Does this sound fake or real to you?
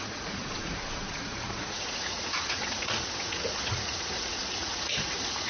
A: fake